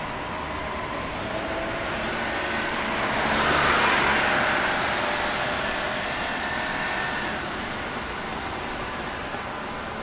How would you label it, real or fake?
real